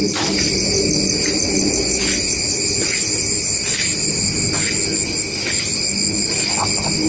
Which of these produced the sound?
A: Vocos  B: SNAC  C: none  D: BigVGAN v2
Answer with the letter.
C